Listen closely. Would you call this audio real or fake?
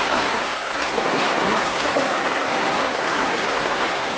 fake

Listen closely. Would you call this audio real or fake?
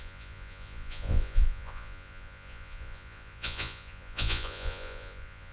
fake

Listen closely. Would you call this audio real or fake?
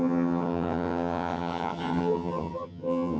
fake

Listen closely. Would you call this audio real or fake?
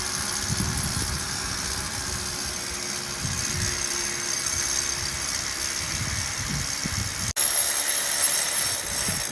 real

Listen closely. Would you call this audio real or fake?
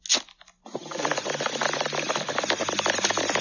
real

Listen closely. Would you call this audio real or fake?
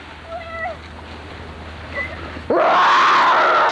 real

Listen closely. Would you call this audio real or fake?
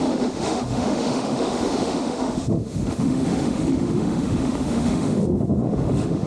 fake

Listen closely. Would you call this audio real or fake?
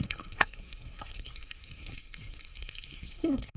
fake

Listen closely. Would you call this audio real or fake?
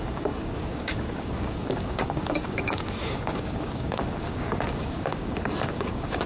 fake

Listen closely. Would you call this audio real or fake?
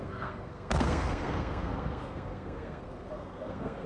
fake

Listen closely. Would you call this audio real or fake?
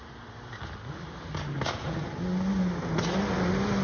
real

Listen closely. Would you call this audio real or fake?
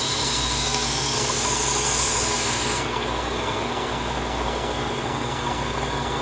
fake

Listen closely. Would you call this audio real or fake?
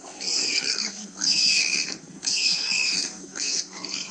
fake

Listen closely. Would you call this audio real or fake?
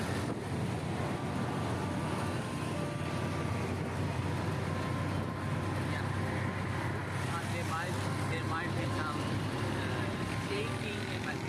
real